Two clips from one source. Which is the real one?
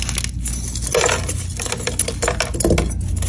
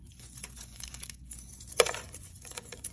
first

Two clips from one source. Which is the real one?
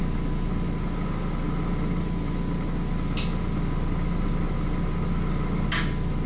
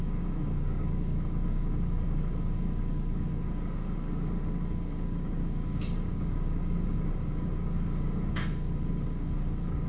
first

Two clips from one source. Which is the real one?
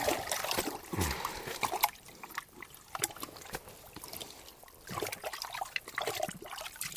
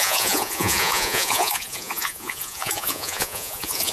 first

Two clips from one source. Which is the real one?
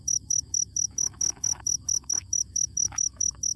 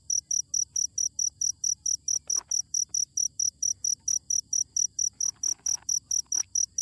second